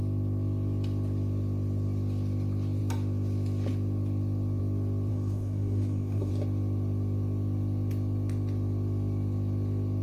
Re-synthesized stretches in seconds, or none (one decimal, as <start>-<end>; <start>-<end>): 5.1-6.3